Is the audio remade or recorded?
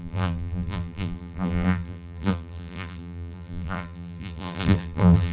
remade